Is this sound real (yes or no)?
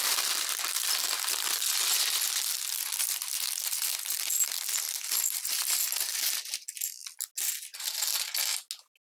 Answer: yes